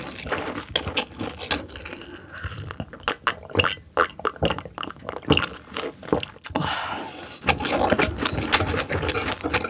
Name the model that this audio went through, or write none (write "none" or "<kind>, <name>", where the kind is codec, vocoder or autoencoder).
none